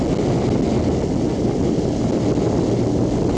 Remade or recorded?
recorded